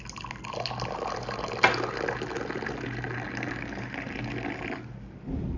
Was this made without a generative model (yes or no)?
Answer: yes